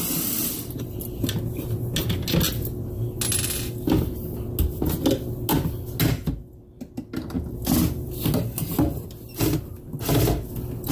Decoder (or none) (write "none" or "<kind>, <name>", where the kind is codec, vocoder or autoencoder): none